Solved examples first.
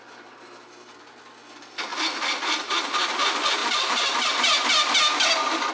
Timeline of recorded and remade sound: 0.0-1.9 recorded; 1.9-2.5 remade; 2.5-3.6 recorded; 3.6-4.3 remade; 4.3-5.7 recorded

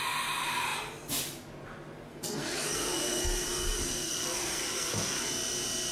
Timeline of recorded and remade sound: 0.0-2.1 recorded; 2.1-5.2 remade; 5.2-5.9 recorded

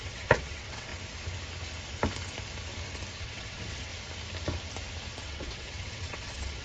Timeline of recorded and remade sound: 0.0-0.9 remade; 0.9-3.2 recorded; 3.2-3.9 remade; 3.9-5.2 recorded; 5.2-6.6 remade

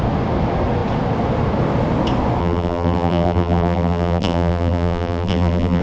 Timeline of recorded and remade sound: 0.0-2.4 recorded; 2.4-5.8 remade

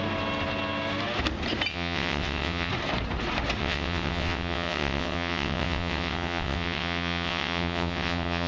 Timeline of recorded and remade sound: 0.0-1.7 recorded; 1.7-2.7 remade; 2.7-3.6 recorded; 3.6-8.5 remade

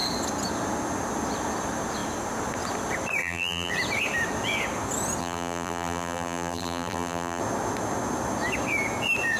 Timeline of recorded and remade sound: 0.0-3.2 recorded; 3.2-3.7 remade; 3.7-5.2 recorded; 5.2-7.4 remade; 7.4-9.4 recorded

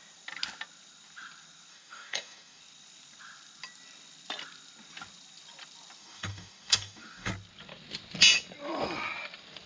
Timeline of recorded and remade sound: 0.0-1.7 recorded; 1.7-2.6 remade; 2.6-6.0 recorded; 6.0-7.3 remade; 7.3-9.7 recorded

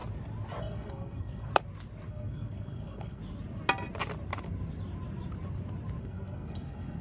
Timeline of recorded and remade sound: 0.0-0.6 recorded; 0.6-1.5 remade; 1.5-2.1 recorded; 2.1-3.2 remade; 3.2-6.0 recorded; 6.0-7.0 remade